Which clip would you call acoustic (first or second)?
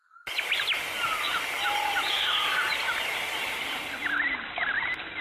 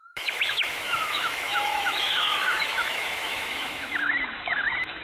first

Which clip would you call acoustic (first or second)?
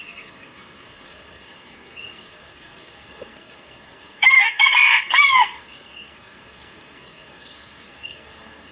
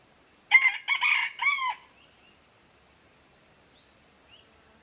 second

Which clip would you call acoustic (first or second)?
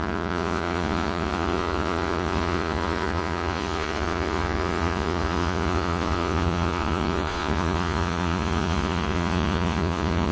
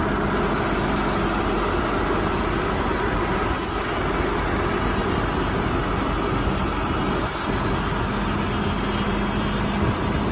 second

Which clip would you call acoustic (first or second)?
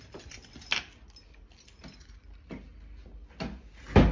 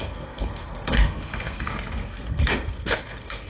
first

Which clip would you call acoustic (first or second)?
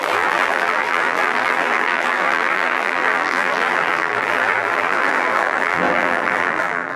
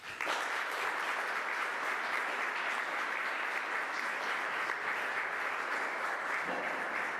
second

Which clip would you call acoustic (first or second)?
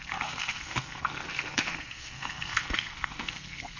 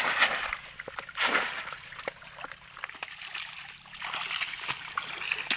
second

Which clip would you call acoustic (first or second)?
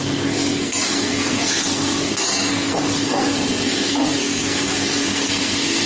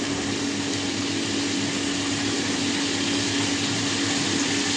second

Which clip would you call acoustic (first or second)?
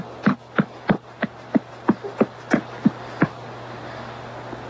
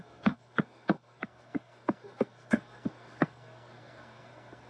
first